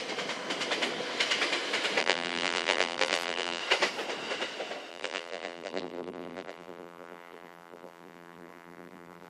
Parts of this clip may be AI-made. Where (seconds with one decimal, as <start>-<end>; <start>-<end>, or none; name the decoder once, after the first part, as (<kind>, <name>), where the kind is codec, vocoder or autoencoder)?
2.0-3.6 (vocoder, BigVGAN v2); 4.9-9.3